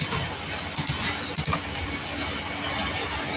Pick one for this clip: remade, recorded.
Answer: recorded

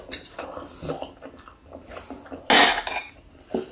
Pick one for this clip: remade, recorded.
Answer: recorded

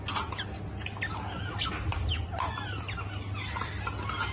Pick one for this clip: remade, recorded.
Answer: recorded